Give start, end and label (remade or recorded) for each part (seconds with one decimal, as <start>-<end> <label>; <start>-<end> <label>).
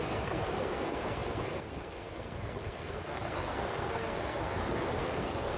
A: 0.0-5.6 remade